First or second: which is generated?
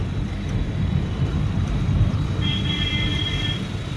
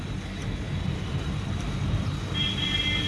first